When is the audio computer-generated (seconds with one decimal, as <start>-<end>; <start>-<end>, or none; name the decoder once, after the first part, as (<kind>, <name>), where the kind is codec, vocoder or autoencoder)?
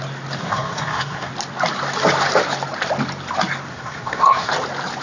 0.4-1.3 (codec, SNAC); 3.7-4.5